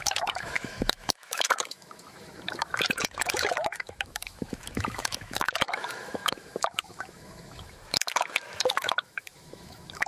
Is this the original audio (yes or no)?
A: no